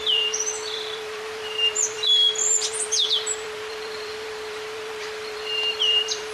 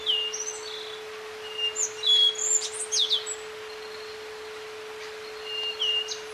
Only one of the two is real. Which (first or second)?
second